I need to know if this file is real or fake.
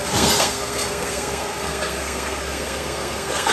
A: fake